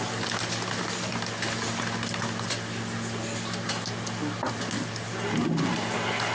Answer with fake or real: real